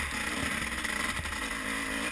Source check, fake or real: real